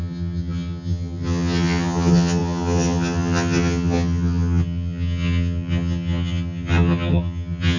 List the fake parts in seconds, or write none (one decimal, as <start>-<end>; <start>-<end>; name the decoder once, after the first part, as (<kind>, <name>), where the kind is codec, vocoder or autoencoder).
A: 0.0-7.8 (vocoder, HiFi-GAN)